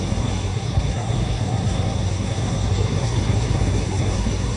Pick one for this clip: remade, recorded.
remade